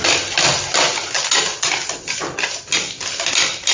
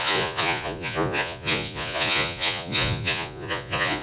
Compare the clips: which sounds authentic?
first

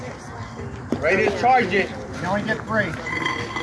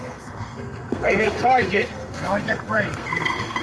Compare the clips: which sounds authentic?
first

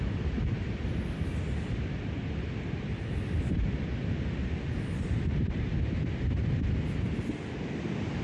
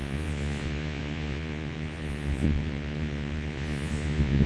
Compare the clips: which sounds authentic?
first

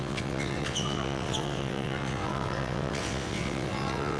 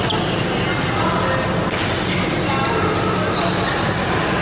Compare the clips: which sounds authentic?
second